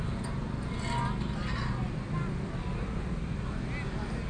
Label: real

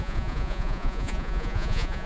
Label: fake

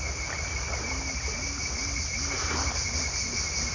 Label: real